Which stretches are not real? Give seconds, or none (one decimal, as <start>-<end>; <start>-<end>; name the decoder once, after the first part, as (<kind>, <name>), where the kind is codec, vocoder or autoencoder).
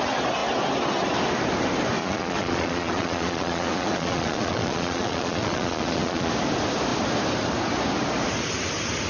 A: 2.0-6.3 (vocoder, Vocos)